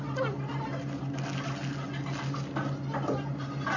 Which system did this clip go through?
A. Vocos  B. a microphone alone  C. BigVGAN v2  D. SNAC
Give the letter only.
B